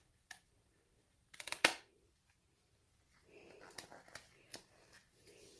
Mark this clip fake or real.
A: fake